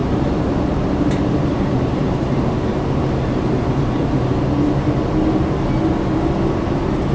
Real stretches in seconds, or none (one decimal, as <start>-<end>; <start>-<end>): 4.3-7.1